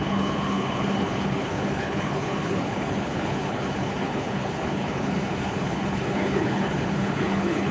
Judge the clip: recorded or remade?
remade